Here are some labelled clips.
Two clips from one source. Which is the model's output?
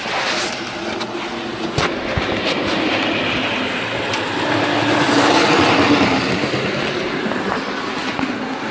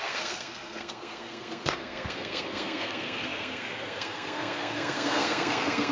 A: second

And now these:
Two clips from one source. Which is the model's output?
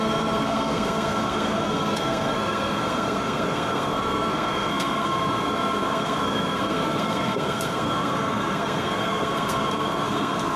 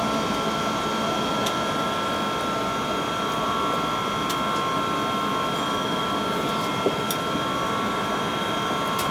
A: first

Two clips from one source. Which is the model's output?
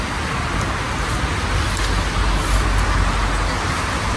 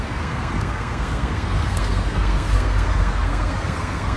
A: second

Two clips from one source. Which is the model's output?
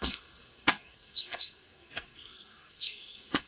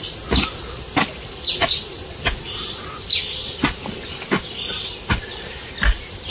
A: first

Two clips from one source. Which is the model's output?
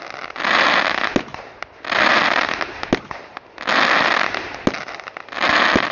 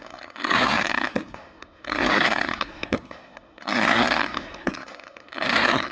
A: second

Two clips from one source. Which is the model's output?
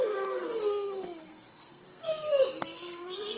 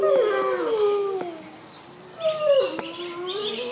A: first